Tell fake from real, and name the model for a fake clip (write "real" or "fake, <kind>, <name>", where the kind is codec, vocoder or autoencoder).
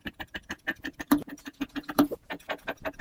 fake, vocoder, Vocos